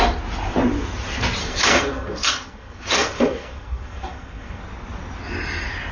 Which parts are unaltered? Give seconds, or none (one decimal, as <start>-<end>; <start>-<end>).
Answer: 0.0-1.4; 4.6-5.9